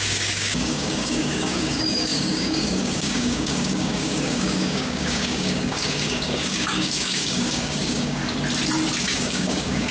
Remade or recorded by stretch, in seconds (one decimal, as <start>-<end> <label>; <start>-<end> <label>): 0.0-8.2 remade; 8.2-9.0 recorded; 9.0-9.9 remade